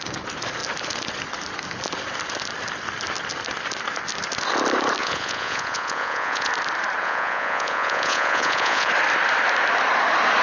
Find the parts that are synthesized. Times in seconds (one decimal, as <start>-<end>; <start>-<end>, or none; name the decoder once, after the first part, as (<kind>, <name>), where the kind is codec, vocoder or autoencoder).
5.0-6.5 (vocoder, Vocos); 7.0-8.9